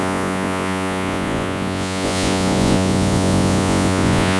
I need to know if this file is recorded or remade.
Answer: remade